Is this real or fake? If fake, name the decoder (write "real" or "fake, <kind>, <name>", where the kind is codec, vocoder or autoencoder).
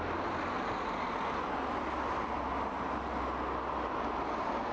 real